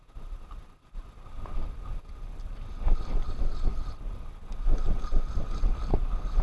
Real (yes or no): yes